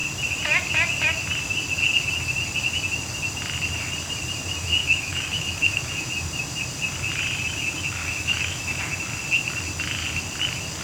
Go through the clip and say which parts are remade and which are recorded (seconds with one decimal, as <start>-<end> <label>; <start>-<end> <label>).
0.0-4.8 recorded; 4.8-6.1 remade; 6.1-8.0 recorded; 8.0-8.8 remade; 8.8-10.8 recorded